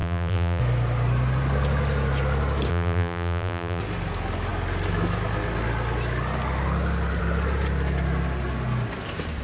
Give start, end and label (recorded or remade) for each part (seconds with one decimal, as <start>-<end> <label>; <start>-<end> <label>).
0.0-0.6 remade; 0.6-2.7 recorded; 2.7-3.8 remade; 3.8-9.4 recorded